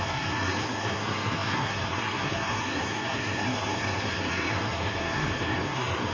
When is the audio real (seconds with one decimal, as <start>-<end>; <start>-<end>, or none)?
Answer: none